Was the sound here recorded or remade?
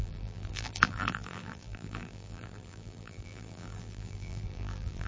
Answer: remade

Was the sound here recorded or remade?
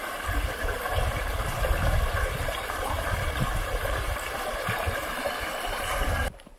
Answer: remade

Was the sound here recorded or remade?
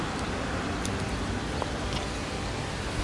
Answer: recorded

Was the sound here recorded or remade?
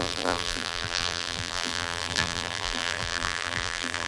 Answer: remade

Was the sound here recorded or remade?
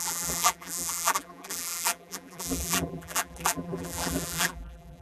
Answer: remade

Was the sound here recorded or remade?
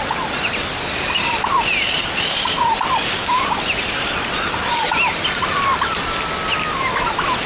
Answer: recorded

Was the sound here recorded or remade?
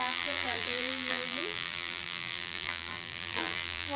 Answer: remade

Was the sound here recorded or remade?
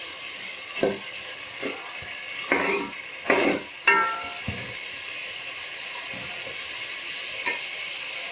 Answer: recorded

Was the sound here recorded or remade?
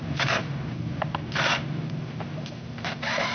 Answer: remade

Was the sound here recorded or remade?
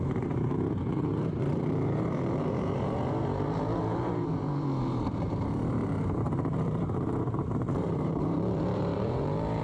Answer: remade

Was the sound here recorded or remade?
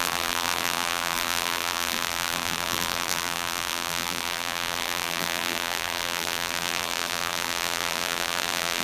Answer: remade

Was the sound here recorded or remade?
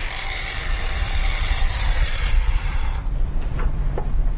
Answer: remade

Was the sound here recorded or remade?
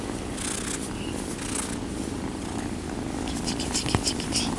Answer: recorded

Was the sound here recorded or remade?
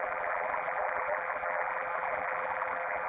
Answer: remade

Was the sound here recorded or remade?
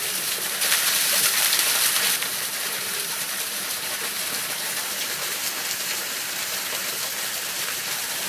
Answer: remade